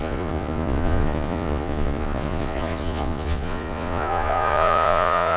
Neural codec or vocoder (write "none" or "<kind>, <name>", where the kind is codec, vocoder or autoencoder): vocoder, Vocos